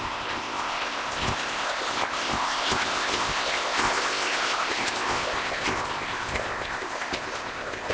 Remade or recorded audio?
remade